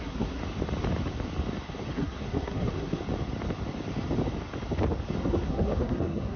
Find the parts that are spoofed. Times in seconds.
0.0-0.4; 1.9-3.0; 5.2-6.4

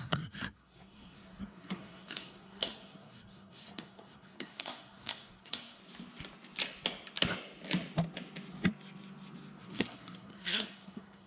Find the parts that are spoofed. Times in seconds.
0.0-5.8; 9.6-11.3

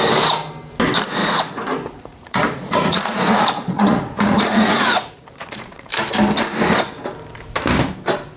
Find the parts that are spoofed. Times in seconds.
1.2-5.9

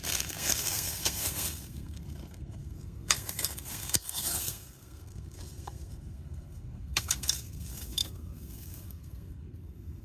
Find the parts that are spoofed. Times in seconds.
0.0-10.0

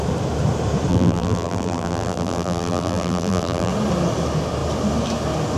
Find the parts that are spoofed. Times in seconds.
0.9-3.7